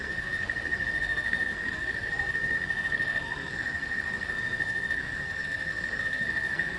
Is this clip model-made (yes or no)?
yes